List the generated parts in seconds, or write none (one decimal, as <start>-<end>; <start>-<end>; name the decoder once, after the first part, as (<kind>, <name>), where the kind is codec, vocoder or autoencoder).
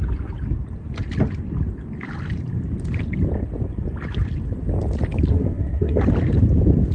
5.3-6.0 (codec, SNAC)